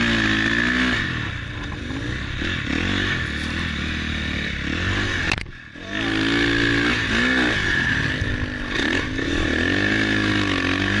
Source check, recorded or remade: recorded